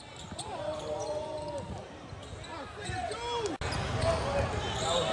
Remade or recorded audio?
recorded